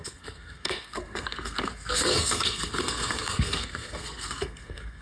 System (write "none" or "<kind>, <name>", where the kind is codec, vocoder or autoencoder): codec, SNAC